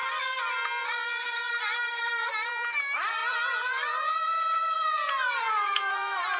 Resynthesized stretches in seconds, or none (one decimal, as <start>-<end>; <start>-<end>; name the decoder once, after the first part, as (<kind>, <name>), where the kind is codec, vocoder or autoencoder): 3.2-6.4 (vocoder, Vocos)